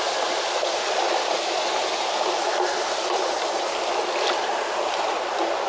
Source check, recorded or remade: recorded